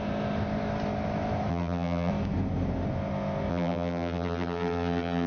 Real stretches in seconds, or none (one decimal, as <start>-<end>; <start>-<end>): 0.0-1.5; 2.1-3.5